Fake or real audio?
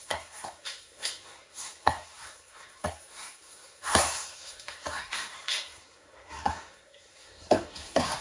fake